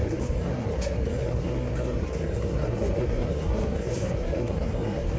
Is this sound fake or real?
fake